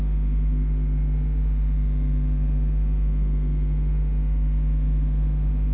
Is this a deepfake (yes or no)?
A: yes